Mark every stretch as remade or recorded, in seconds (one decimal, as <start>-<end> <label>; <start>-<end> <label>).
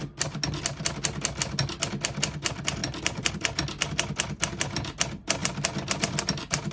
0.0-2.8 recorded; 2.8-3.3 remade; 3.3-5.4 recorded; 5.4-6.2 remade; 6.2-6.7 recorded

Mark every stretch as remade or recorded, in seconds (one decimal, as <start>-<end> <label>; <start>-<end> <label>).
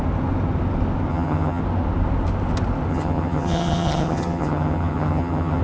0.0-1.1 recorded; 1.1-1.6 remade; 1.6-2.9 recorded; 2.9-5.6 remade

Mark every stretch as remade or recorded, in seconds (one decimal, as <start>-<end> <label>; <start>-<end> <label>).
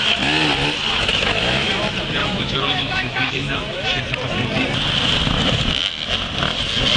0.0-1.1 recorded; 1.1-1.7 remade; 1.7-2.2 recorded; 2.2-4.0 remade; 4.0-7.0 recorded